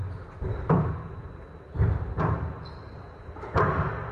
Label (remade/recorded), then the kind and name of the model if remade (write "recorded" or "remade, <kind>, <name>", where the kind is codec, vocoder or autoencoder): recorded